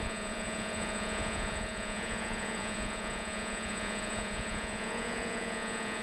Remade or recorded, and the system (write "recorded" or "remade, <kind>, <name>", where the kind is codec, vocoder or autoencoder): remade, vocoder, Vocos